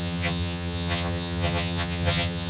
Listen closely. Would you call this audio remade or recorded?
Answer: remade